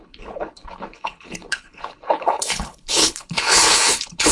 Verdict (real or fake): fake